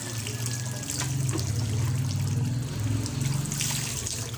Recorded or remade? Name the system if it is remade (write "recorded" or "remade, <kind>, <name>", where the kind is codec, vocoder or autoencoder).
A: recorded